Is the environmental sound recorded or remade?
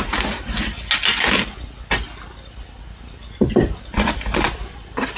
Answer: recorded